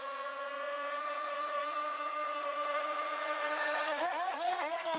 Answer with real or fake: fake